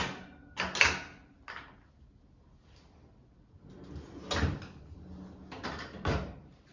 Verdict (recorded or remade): recorded